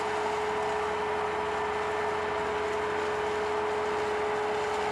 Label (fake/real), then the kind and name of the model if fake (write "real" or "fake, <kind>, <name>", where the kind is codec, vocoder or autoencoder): real